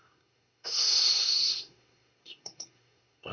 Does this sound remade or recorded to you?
remade